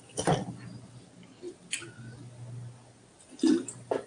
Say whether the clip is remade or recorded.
recorded